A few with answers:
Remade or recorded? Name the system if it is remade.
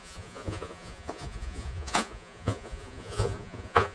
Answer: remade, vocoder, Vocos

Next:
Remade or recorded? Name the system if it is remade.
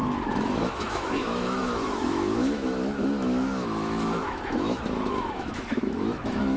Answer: remade, autoencoder, DAC-VAE